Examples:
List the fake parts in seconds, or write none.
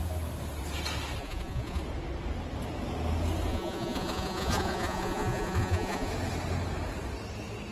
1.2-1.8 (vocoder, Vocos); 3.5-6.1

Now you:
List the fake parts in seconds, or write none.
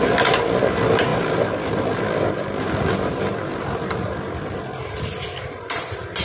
1.1-1.8 (vocoder, BigVGAN v2)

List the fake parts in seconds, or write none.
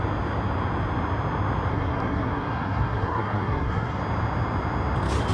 1.7-4.0 (codec, SNAC)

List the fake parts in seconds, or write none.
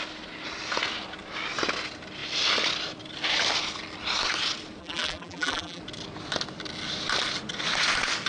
4.8-5.8 (vocoder, BigVGAN v2)